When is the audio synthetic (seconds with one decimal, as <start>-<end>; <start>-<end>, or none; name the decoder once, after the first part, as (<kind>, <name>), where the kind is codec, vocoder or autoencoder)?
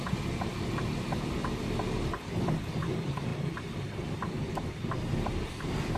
0.0-0.5 (vocoder, BigVGAN v2); 1.1-3.3; 4.1-6.0